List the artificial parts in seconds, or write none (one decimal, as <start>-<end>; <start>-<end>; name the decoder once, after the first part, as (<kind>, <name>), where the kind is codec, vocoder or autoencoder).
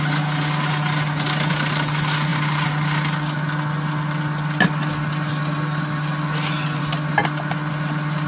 none